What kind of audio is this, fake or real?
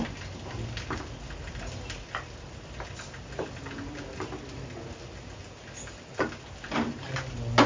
real